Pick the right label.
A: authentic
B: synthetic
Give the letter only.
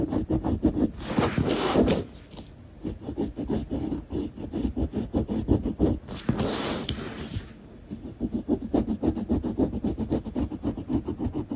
A